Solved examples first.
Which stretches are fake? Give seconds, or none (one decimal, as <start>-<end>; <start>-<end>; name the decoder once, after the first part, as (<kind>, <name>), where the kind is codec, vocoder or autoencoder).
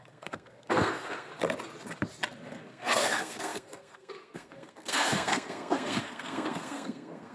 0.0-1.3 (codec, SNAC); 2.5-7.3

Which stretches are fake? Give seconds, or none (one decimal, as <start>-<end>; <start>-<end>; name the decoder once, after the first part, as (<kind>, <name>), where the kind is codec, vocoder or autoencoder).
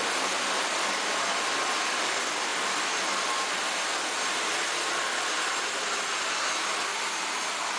none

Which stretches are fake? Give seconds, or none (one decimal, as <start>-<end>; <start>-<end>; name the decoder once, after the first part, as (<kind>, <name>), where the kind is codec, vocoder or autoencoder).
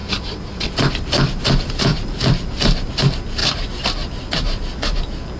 0.0-1.4 (vocoder, BigVGAN v2); 1.9-2.9